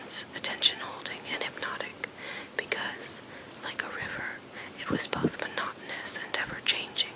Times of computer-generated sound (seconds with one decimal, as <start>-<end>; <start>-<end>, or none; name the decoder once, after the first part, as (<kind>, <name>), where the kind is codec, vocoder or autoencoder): none